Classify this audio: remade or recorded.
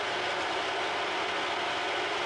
recorded